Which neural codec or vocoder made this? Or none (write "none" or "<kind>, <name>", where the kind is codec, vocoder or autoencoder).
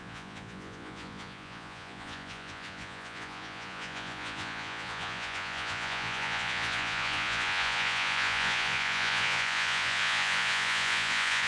vocoder, Vocos